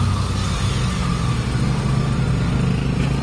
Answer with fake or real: real